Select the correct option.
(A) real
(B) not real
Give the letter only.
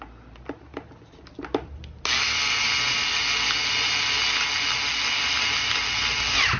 A